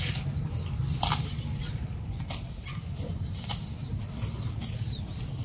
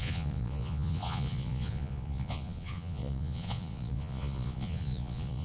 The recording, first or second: first